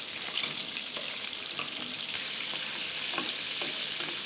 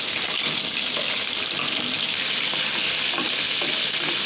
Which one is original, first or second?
second